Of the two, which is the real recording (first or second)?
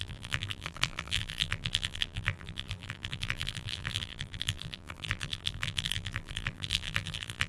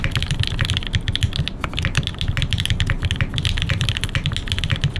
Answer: second